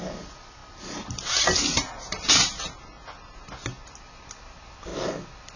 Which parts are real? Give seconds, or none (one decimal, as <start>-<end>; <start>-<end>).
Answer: 0.0-5.6